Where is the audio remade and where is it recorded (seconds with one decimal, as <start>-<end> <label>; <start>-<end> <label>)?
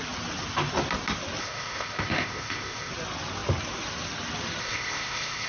0.0-1.4 recorded; 1.4-2.9 remade; 2.9-4.6 recorded; 4.6-5.5 remade